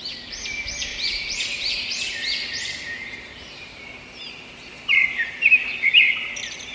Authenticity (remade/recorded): remade